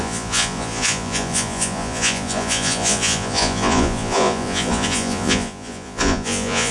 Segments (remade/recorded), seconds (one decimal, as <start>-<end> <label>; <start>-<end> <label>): 0.0-6.7 remade

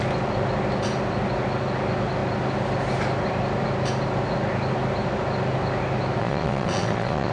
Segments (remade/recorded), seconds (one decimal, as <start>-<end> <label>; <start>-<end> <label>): 0.0-6.2 recorded; 6.2-7.3 remade

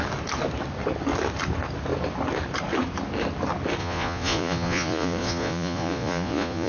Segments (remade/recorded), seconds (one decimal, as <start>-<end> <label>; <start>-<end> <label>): 0.0-3.8 recorded; 3.8-6.7 remade

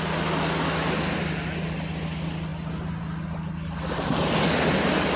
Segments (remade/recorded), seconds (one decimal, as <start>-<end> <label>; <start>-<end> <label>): 0.0-5.2 recorded